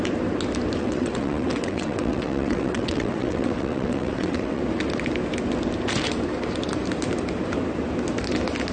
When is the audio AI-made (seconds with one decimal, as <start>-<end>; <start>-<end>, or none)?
0.8-4.6